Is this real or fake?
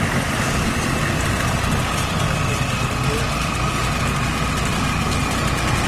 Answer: real